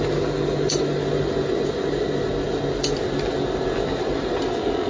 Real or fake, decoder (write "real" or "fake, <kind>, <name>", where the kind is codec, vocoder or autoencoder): real